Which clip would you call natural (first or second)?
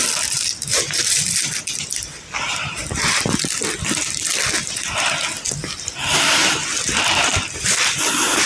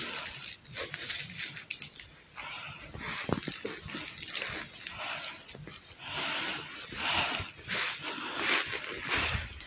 second